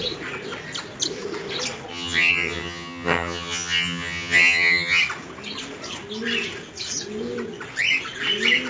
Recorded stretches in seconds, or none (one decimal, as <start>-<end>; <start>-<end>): 0.0-1.9; 5.0-8.7